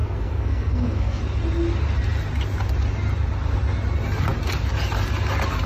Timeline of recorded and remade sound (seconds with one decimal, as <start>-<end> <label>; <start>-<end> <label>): 0.0-1.2 remade; 1.2-5.7 recorded